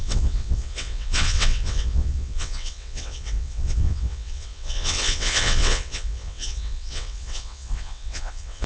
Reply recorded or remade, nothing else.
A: remade